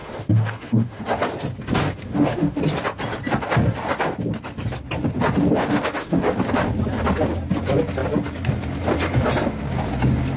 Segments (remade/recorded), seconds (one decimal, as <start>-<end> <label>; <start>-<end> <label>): 0.0-1.0 remade; 1.0-1.8 recorded; 1.8-2.6 remade; 2.6-5.6 recorded; 5.6-6.2 remade; 6.2-10.4 recorded